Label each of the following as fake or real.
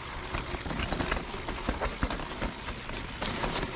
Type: real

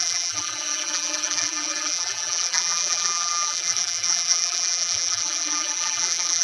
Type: fake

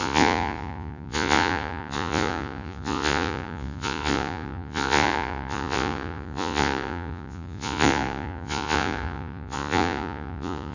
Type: fake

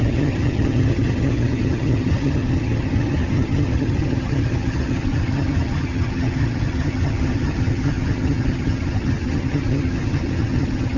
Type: fake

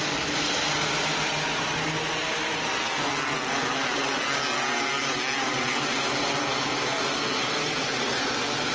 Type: real